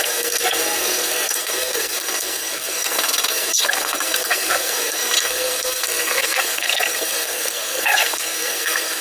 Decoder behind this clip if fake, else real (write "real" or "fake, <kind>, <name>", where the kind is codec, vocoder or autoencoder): fake, codec, SNAC